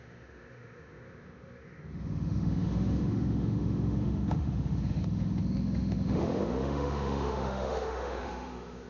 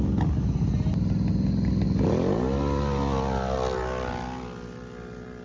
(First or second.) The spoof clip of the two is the first